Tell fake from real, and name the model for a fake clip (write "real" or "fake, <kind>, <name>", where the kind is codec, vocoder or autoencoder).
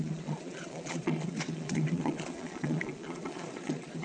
fake, vocoder, Vocos